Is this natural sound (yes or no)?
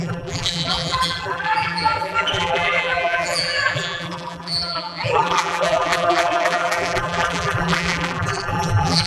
no